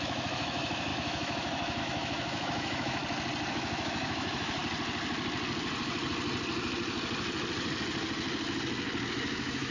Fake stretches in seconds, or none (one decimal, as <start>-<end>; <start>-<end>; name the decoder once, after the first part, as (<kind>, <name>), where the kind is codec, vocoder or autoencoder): 0.0-3.0 (autoencoder, DAC-VAE); 3.5-4.6; 9.1-9.7